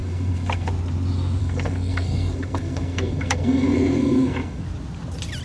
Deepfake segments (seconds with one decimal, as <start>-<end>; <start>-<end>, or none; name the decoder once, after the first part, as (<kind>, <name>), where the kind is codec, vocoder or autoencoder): 0.0-0.7 (codec, SNAC); 1.4-4.6